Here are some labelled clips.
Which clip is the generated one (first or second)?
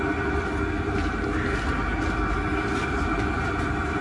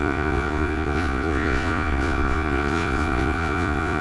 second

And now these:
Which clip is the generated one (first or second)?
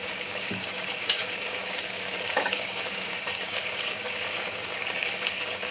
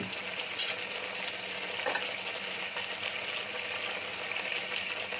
first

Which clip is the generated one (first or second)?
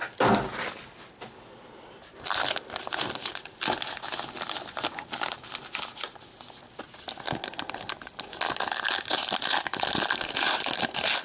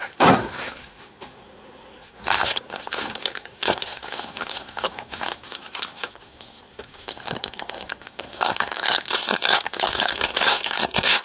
second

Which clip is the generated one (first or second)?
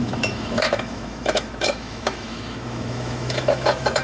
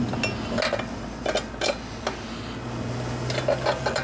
first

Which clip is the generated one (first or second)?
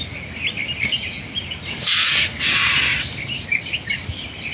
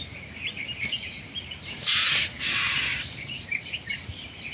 second